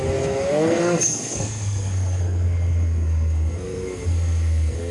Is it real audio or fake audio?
fake